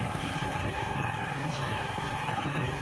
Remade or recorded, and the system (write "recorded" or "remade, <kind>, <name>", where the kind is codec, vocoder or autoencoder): remade, codec, SNAC